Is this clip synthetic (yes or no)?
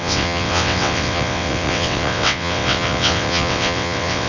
yes